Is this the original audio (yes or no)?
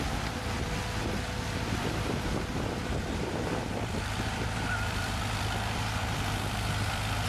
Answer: no